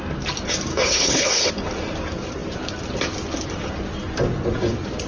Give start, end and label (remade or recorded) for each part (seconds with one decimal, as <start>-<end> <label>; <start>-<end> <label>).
0.0-0.7 recorded; 0.7-1.5 remade; 1.5-5.1 recorded